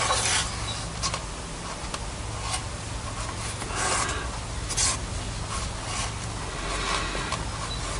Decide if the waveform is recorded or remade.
recorded